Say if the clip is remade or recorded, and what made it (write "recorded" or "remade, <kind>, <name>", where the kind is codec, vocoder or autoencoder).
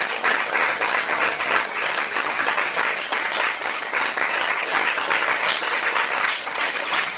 remade, vocoder, HiFi-GAN